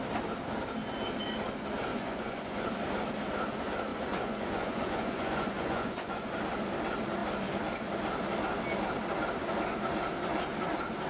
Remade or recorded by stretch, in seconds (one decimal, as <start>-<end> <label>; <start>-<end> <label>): 0.0-1.9 recorded; 1.9-2.7 remade; 2.7-3.9 recorded; 3.9-6.3 remade; 6.3-11.1 recorded